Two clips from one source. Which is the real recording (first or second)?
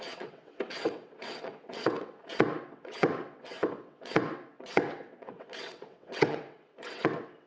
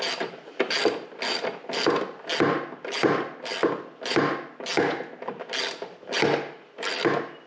second